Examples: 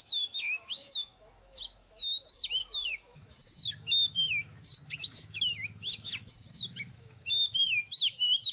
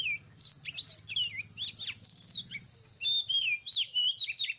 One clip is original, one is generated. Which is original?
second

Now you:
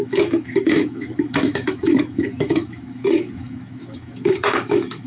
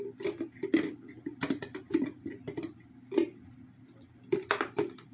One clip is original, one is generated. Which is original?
second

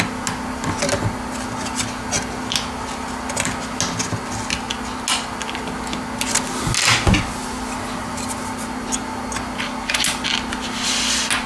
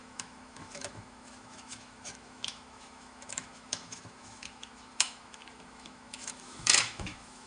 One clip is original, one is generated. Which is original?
first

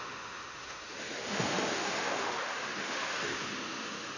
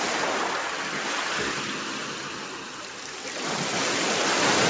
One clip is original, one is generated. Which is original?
second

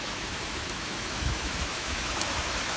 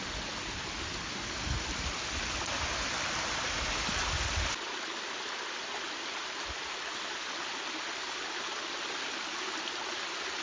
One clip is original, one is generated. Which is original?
second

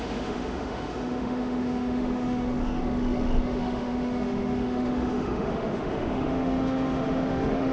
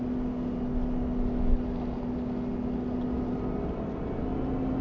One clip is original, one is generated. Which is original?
second